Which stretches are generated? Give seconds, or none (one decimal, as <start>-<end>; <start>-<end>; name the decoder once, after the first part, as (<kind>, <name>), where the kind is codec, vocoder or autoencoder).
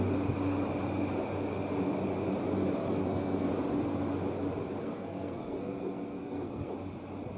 3.0-3.5 (codec, SNAC); 4.8-6.7